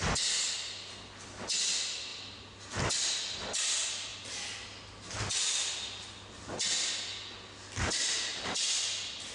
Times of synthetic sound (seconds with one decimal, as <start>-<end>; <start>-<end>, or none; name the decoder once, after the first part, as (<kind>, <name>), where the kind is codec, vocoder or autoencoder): none